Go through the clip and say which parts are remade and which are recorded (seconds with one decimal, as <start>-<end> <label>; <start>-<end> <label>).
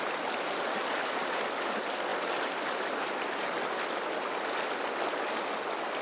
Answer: 0.0-6.0 recorded